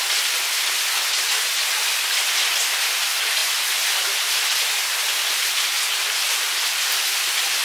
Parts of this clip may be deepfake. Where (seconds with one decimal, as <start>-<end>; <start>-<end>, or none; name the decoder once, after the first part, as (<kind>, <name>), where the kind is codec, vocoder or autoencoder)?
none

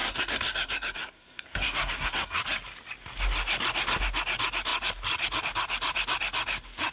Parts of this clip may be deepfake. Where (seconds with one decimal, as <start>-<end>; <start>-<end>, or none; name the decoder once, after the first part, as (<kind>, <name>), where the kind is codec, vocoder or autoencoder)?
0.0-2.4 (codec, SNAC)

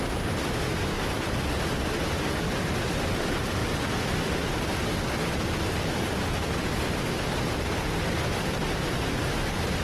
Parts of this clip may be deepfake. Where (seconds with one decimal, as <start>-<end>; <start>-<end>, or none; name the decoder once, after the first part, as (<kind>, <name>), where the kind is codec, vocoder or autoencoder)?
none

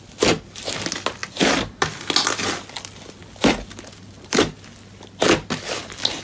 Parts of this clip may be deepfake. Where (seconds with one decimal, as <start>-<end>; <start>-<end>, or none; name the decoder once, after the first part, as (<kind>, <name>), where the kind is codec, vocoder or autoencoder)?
none